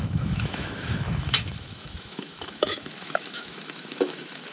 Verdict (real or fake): fake